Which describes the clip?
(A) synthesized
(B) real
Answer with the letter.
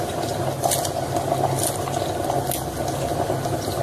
B